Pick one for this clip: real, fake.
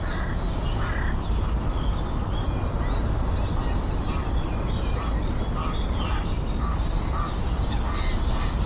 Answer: real